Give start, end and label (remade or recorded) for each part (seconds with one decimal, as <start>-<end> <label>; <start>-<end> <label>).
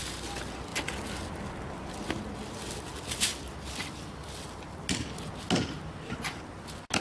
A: 0.0-7.0 recorded